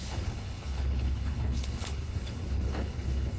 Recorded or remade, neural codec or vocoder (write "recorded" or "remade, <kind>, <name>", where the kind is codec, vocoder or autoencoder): remade, codec, HILCodec